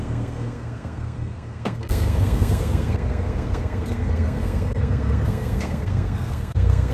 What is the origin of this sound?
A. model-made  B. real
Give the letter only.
A